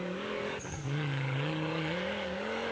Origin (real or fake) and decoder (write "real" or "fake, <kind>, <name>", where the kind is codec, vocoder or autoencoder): fake, codec, DAC